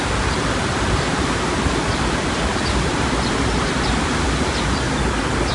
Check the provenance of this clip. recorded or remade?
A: recorded